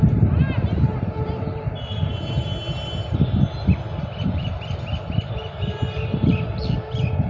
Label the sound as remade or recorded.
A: recorded